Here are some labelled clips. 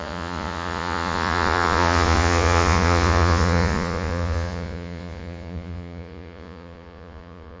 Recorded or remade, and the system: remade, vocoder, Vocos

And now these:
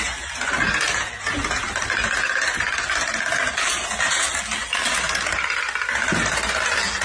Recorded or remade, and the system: recorded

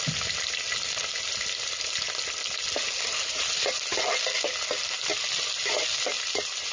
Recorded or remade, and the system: recorded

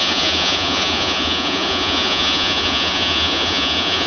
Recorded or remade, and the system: remade, vocoder, Vocos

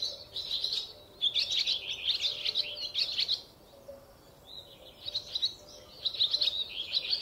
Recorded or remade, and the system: recorded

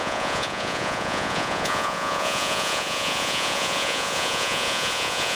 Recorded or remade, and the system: remade, vocoder, Vocos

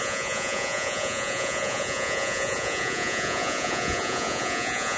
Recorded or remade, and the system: remade, vocoder, Vocos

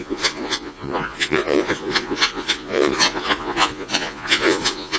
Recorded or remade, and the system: remade, vocoder, Vocos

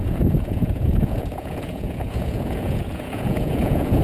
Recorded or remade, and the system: remade, vocoder, Vocos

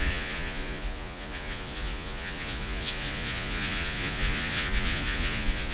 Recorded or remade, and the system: remade, vocoder, Vocos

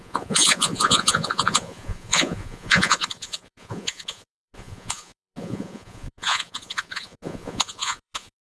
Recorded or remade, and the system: remade, vocoder, Vocos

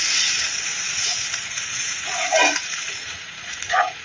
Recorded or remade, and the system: remade, vocoder, Vocos